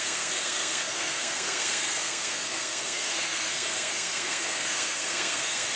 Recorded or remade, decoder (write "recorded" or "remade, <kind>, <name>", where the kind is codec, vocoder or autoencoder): remade, codec, SNAC